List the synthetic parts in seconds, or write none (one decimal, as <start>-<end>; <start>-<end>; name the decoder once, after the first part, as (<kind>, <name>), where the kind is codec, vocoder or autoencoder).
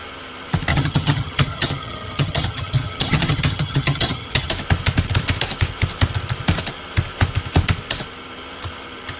0.7-4.5 (vocoder, HiFi-GAN)